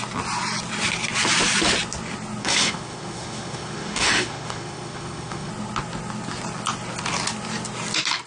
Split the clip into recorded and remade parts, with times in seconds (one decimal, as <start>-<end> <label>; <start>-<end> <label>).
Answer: 0.0-2.4 recorded; 2.4-5.5 remade; 5.5-8.3 recorded